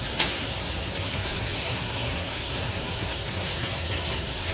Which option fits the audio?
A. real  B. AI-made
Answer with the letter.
B